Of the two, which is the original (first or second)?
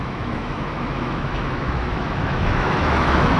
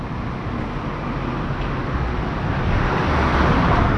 second